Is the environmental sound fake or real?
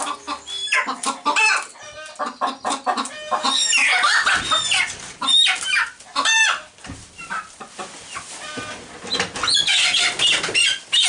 real